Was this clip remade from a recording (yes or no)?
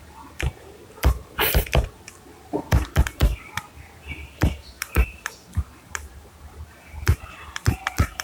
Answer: yes